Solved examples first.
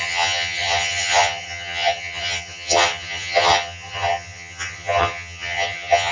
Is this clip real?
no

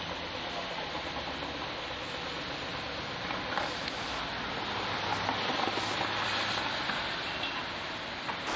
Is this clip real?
yes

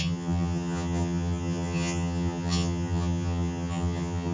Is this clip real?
no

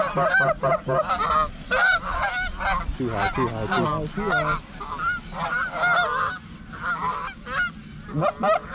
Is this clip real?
yes